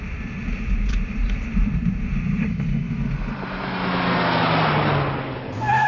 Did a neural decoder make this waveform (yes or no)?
no